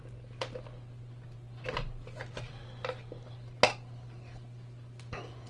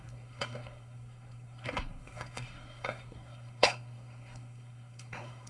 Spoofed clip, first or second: second